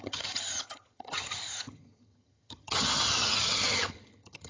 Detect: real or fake fake